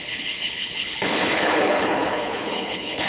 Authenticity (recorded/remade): remade